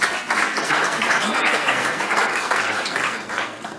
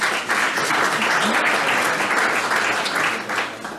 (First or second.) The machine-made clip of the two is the first